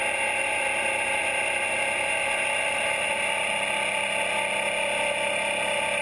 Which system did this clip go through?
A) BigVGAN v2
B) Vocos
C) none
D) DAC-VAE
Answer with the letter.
C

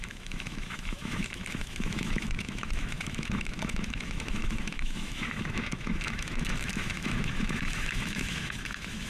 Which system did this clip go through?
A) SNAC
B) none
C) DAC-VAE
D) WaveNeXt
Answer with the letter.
C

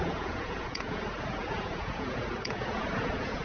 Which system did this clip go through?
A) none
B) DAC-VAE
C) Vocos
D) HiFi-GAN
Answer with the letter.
C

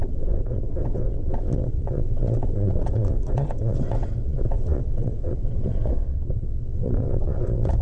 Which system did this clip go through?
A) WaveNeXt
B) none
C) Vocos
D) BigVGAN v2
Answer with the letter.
A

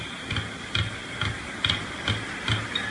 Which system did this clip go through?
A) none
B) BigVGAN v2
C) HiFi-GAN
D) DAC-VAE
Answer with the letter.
A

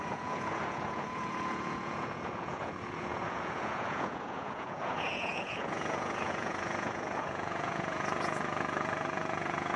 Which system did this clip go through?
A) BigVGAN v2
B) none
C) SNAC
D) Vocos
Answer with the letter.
D